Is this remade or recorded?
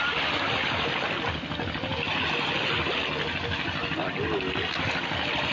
recorded